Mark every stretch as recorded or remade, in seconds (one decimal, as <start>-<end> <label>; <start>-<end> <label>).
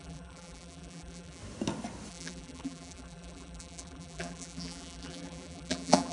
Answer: 0.0-1.4 remade; 1.4-2.1 recorded; 2.1-6.1 remade